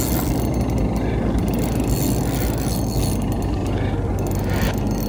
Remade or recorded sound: recorded